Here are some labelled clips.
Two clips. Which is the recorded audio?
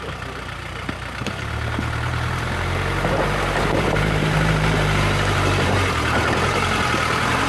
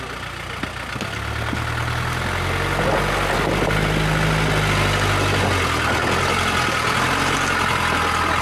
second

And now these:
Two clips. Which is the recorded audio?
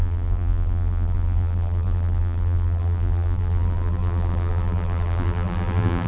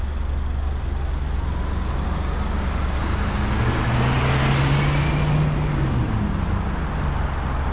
second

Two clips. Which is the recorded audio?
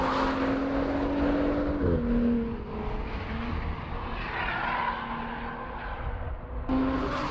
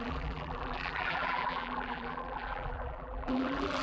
first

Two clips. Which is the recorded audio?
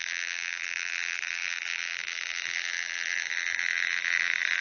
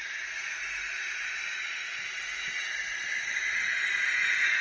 second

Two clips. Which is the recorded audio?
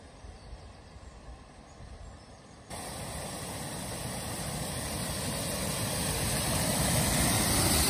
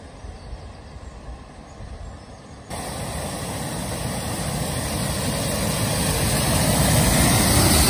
second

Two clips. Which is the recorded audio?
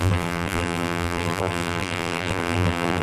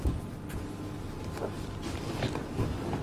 second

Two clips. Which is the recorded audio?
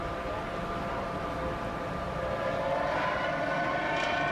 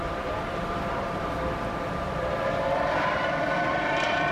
first